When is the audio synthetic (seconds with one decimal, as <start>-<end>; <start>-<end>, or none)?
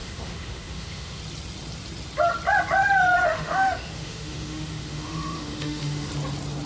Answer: 0.0-1.2; 3.2-6.1